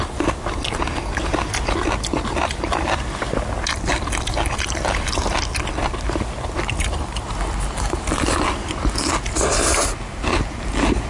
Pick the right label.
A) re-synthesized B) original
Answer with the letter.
B